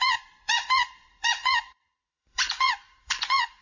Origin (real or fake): fake